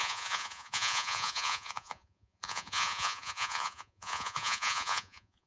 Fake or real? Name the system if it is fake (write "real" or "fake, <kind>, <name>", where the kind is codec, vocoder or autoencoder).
fake, vocoder, Vocos